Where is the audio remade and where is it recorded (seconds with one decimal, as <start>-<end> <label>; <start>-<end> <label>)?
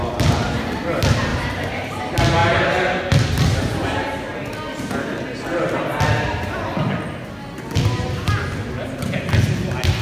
0.0-1.3 recorded; 1.3-2.0 remade; 2.0-2.4 recorded; 2.4-3.0 remade; 3.0-10.0 recorded